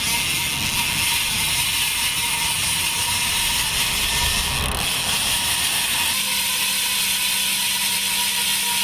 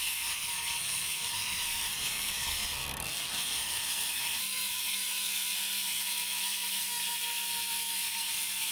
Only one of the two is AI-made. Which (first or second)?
second